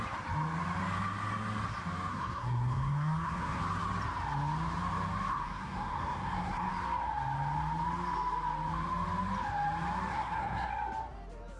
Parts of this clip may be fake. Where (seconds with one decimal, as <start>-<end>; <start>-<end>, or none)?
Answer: 2.1-3.6; 5.3-6.7; 10.1-10.7